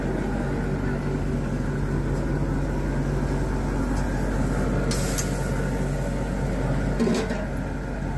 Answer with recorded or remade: recorded